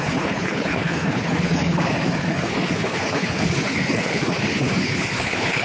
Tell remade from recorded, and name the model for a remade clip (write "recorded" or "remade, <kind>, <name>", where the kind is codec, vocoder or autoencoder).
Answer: remade, codec, HILCodec